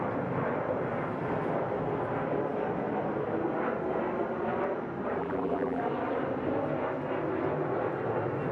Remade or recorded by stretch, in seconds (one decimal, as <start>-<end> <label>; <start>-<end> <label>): 0.0-5.2 recorded; 5.2-5.8 remade; 5.8-8.5 recorded